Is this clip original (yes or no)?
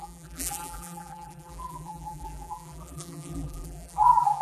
no